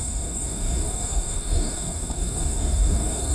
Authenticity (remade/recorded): remade